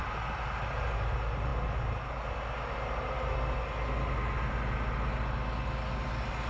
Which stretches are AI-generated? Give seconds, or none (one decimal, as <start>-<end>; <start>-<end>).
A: none